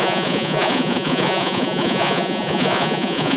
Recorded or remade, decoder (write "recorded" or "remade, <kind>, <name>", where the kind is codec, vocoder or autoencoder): remade, vocoder, Vocos